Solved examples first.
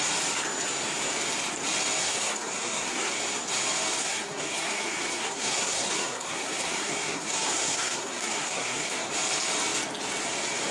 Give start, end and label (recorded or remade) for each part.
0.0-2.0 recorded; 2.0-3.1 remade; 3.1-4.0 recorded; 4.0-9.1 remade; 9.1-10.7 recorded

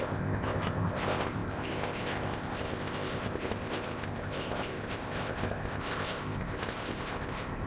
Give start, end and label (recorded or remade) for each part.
0.0-7.7 remade

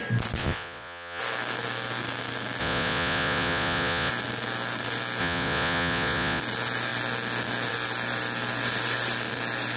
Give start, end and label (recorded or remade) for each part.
0.0-0.4 recorded; 0.4-1.2 remade; 1.2-2.6 recorded; 2.6-4.1 remade; 4.1-5.2 recorded; 5.2-6.4 remade; 6.4-9.8 recorded

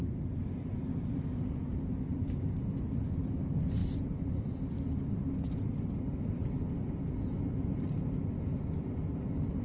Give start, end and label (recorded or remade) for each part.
0.0-9.6 recorded

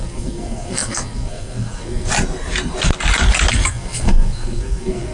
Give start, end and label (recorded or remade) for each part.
0.0-2.1 remade; 2.1-3.5 recorded; 3.5-5.1 remade

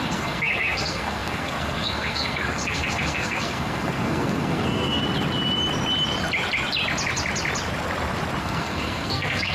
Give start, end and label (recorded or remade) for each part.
0.0-5.0 remade; 5.0-8.4 recorded; 8.4-9.5 remade

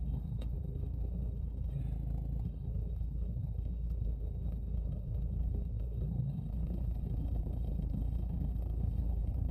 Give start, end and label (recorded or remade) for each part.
0.0-1.8 remade; 1.8-2.4 recorded; 2.4-9.5 remade